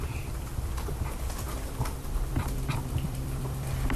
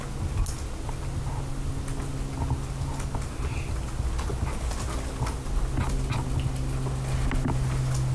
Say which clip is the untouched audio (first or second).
second